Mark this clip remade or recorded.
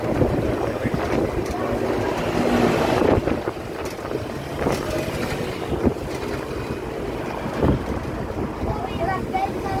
recorded